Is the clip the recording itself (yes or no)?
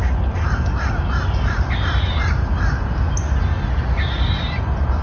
yes